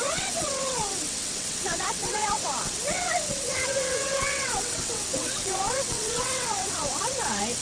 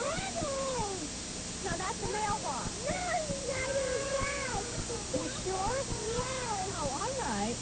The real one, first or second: second